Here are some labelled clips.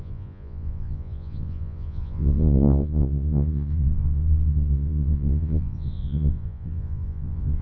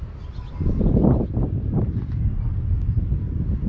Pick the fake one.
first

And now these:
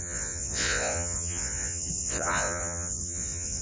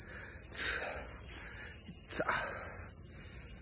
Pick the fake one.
first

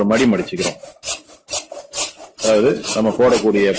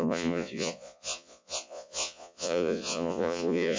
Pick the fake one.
second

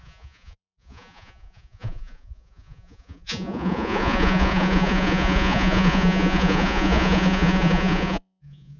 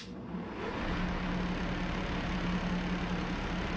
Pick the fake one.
first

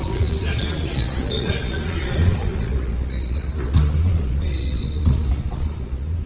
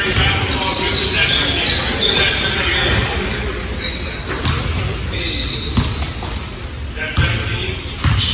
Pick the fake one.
first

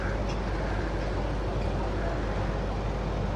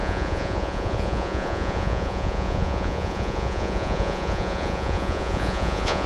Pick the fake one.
second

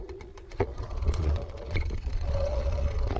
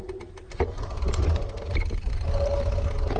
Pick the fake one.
first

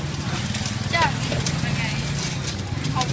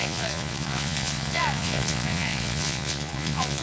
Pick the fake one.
second